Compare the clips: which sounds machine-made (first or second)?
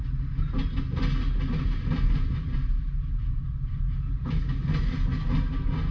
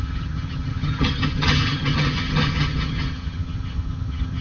second